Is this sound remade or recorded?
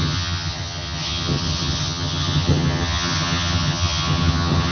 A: remade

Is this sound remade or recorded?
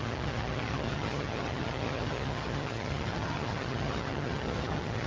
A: remade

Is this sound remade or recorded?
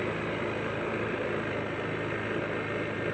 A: recorded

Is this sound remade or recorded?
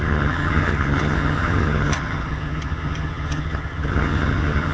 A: remade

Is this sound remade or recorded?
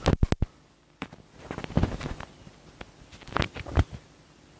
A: recorded